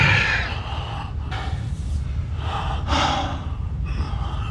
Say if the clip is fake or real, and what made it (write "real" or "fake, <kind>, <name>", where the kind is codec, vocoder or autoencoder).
real